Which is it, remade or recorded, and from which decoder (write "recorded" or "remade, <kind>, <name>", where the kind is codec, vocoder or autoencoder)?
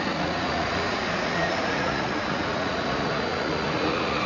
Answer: remade, vocoder, Vocos